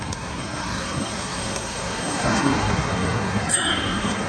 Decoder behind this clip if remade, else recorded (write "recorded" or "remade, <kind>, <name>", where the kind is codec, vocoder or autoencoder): remade, codec, SNAC